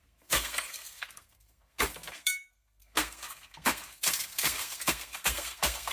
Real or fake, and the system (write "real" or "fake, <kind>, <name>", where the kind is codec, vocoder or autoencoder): fake, codec, SNAC